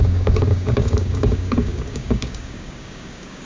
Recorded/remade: remade